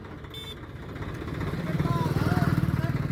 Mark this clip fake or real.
real